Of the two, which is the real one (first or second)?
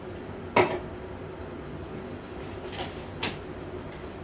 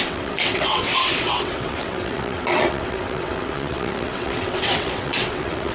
first